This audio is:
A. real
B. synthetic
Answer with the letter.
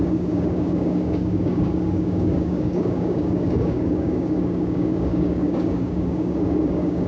B